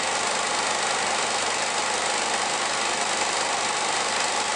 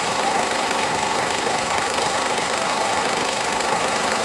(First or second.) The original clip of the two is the first